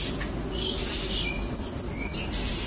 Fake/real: real